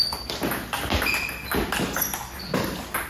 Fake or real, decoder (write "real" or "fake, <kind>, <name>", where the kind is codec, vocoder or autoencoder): real